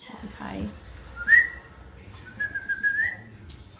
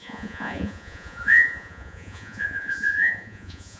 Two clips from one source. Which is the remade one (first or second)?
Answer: second